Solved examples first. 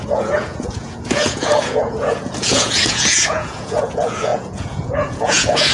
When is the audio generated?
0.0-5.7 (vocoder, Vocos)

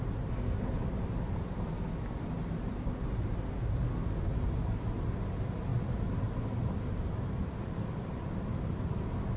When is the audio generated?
none